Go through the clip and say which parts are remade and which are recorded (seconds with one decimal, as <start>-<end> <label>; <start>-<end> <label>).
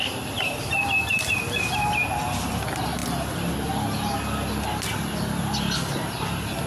0.0-1.1 recorded; 1.1-2.6 remade; 2.6-6.7 recorded